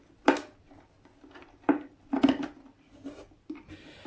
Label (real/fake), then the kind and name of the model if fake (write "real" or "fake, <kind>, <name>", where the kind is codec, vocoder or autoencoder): real